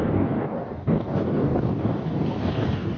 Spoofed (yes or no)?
yes